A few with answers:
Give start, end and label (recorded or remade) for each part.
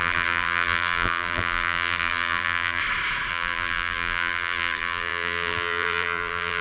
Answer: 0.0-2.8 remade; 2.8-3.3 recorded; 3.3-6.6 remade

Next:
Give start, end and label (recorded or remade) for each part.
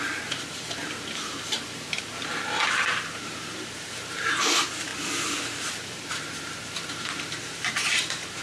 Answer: 0.0-4.9 remade; 4.9-5.8 recorded; 5.8-8.4 remade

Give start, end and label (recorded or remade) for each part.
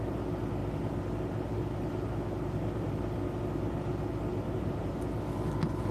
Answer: 0.0-4.3 recorded; 4.3-5.0 remade; 5.0-5.9 recorded